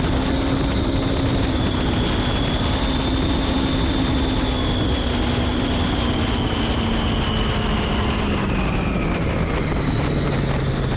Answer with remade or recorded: recorded